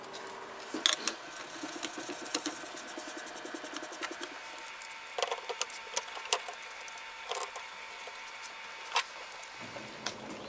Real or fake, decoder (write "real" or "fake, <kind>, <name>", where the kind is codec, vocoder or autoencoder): real